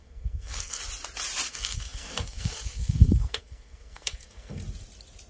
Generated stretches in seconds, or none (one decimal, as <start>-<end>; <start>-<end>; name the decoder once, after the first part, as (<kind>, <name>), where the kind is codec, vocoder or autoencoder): 0.0-0.8 (codec, SNAC); 1.5-4.6